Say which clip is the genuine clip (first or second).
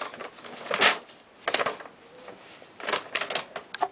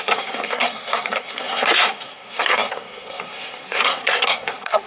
first